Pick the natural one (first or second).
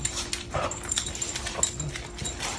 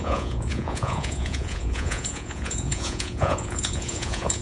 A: first